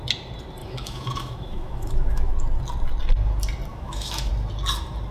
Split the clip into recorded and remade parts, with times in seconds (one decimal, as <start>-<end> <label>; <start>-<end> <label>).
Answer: 0.0-0.6 recorded; 0.6-2.3 remade; 2.3-3.7 recorded; 3.7-4.3 remade; 4.3-5.1 recorded